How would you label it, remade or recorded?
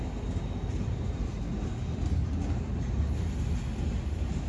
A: recorded